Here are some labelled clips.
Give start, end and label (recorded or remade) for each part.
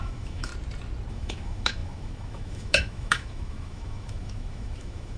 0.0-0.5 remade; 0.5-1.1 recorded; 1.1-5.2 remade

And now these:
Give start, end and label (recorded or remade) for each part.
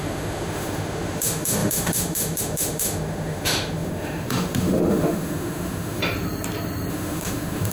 0.0-6.0 remade; 6.0-6.9 recorded; 6.9-7.7 remade